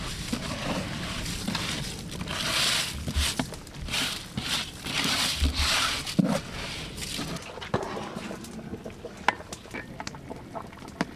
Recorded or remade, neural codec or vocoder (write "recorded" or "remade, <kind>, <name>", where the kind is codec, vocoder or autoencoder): recorded